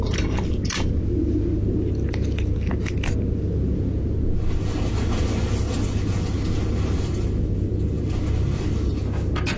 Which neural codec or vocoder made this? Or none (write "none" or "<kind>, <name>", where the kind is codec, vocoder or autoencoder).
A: none